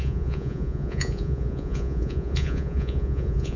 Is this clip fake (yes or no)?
yes